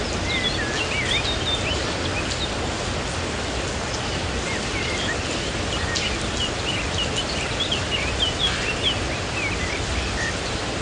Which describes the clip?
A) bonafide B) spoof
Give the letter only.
A